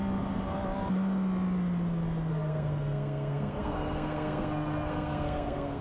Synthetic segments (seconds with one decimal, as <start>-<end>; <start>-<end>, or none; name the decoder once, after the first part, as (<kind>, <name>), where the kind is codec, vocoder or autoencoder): 2.3-5.8 (codec, SNAC)